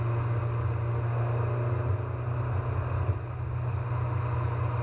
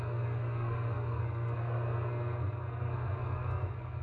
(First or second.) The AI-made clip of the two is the second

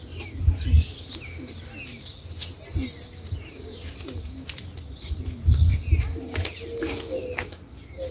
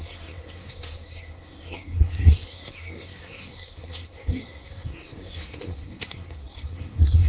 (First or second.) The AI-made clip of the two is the second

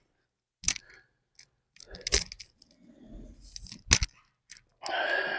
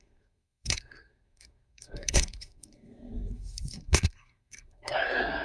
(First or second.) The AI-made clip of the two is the second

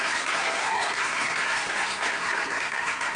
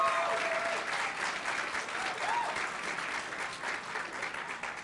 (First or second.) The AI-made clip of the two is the first